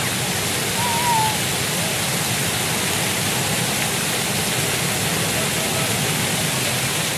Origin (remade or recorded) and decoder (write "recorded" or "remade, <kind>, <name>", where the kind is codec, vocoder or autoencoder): recorded